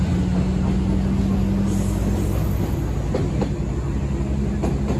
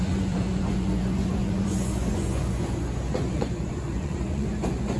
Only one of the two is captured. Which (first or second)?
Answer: first